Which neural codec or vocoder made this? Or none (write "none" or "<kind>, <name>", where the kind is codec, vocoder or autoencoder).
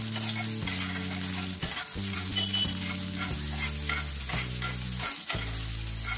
none